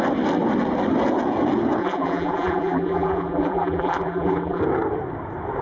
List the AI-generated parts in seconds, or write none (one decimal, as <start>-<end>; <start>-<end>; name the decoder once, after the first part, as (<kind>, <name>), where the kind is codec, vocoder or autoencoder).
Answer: 1.8-4.6 (vocoder, BigVGAN v2)